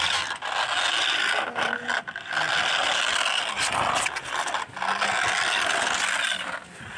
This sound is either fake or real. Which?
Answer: real